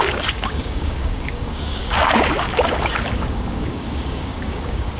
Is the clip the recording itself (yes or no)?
no